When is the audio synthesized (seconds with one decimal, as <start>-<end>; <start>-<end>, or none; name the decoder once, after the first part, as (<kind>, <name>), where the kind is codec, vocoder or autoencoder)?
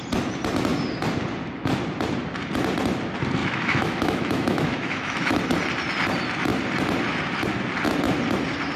3.4-5.4 (autoencoder, DAC-VAE)